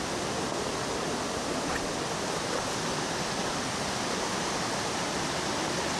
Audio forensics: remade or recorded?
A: recorded